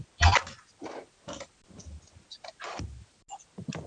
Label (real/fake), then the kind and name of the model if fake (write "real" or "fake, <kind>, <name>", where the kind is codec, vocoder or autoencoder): real